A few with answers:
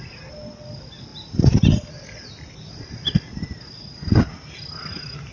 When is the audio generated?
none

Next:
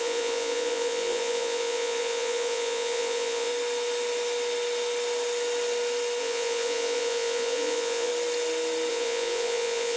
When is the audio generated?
0.0-3.5 (vocoder, Vocos); 6.2-8.1; 8.9-10.0